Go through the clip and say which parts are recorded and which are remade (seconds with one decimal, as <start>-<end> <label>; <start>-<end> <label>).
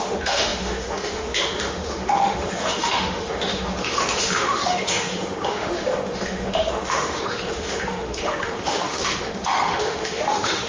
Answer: 0.0-10.7 remade